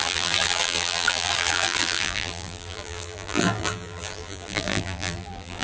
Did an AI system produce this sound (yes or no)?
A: yes